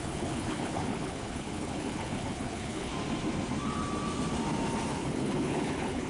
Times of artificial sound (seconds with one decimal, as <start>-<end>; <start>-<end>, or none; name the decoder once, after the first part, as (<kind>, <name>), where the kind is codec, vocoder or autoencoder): 0.0-2.9 (codec, HILCodec); 4.9-6.1